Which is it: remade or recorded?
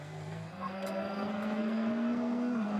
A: remade